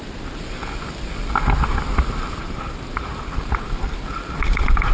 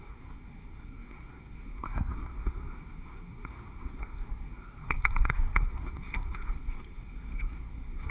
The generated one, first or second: second